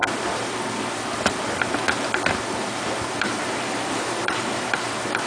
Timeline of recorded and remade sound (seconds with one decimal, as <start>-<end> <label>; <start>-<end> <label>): 0.0-3.2 recorded; 3.2-5.3 remade